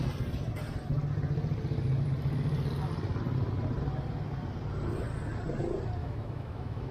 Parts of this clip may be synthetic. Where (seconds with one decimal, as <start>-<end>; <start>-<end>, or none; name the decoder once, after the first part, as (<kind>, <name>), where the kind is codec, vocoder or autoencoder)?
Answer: 6.0-6.9 (autoencoder, DAC-VAE)

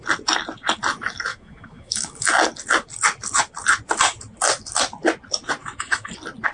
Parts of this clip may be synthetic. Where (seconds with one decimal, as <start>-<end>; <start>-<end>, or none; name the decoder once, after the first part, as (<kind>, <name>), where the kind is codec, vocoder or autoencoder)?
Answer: 1.3-2.3 (autoencoder, DAC-VAE); 5.6-6.1

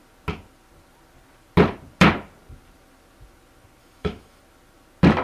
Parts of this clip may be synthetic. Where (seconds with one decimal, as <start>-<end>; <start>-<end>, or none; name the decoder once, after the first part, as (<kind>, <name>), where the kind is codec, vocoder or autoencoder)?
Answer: 3.8-4.4 (autoencoder, DAC-VAE)

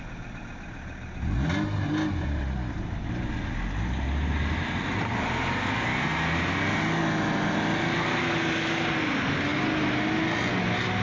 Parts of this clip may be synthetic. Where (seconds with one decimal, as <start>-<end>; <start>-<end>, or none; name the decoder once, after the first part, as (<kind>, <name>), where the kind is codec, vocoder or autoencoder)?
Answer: none